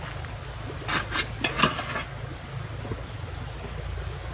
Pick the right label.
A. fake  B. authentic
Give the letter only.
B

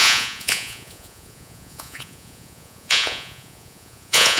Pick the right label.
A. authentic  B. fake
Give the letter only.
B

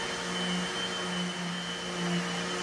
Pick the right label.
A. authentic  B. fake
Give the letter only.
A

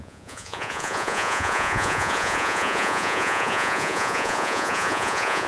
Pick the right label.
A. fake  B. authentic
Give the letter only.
A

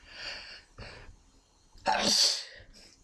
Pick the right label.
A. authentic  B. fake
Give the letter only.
A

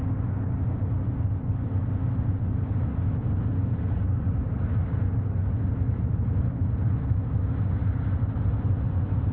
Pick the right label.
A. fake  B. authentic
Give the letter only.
B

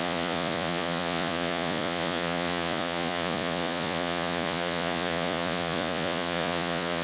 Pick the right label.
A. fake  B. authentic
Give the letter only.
A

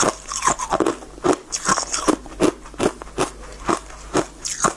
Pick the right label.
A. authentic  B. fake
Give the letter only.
A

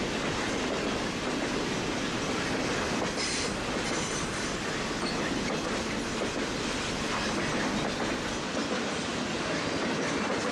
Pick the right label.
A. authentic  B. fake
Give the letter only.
A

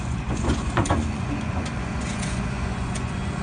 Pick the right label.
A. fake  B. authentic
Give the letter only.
A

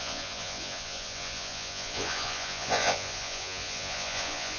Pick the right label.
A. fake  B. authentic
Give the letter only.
A